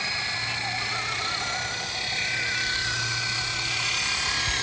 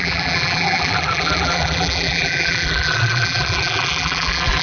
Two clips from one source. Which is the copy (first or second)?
second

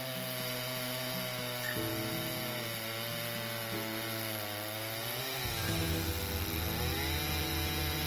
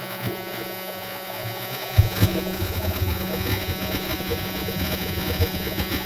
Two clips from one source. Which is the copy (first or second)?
second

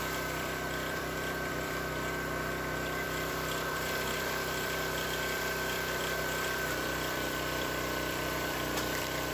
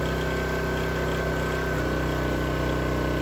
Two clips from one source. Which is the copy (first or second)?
first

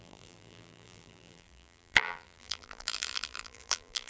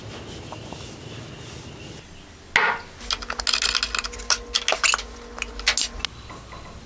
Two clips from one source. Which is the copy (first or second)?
first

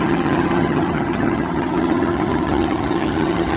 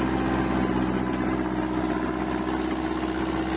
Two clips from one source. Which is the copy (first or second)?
first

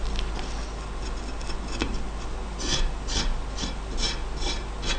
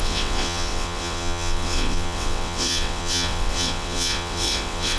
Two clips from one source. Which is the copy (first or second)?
second